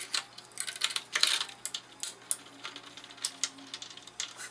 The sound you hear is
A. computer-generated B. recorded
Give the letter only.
B